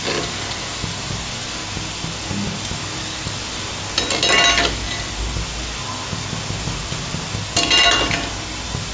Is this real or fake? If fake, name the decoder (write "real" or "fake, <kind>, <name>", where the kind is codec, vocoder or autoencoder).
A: real